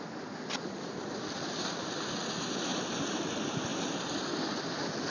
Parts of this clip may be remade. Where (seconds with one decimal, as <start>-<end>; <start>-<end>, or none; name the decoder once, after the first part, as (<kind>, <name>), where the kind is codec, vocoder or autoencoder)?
2.7-3.3 (vocoder, BigVGAN v2); 3.7-4.4